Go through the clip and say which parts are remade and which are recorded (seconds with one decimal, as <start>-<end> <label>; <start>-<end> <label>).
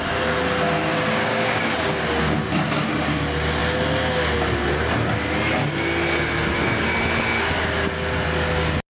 0.0-0.9 recorded; 0.9-1.9 remade; 1.9-9.0 recorded